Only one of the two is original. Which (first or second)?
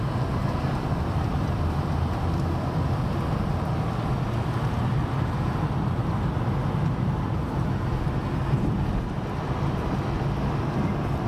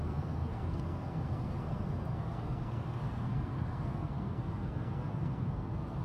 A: first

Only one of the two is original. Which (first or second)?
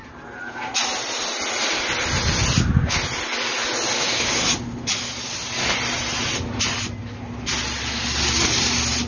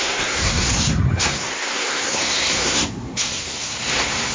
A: first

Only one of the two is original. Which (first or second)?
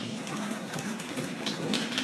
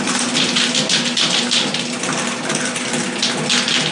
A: second